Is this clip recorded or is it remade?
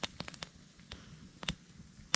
recorded